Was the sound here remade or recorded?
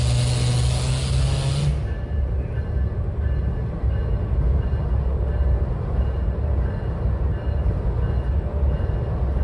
recorded